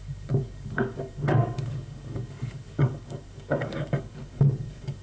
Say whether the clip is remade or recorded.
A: remade